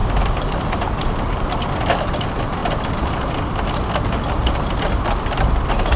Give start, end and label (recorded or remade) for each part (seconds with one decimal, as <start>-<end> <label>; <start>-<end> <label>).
0.0-1.6 remade; 1.6-6.0 recorded